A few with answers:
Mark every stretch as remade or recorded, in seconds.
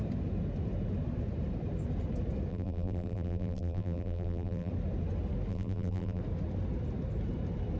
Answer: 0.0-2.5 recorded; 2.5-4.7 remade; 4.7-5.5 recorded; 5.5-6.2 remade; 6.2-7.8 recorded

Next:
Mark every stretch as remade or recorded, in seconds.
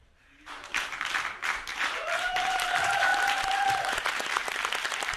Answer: 0.0-4.4 remade; 4.4-5.2 recorded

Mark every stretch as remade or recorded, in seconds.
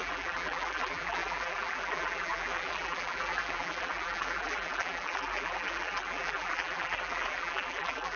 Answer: 0.0-8.2 remade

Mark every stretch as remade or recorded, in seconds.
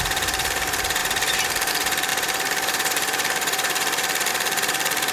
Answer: 0.0-5.1 remade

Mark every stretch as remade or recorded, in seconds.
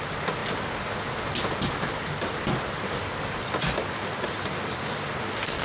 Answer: 0.0-5.6 recorded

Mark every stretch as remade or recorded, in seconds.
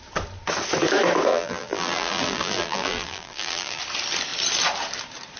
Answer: 0.0-1.3 recorded; 1.3-3.8 remade; 3.8-5.4 recorded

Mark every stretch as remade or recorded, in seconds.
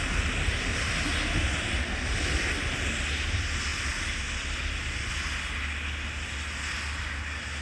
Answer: 0.0-3.7 recorded; 3.7-5.1 remade; 5.1-7.6 recorded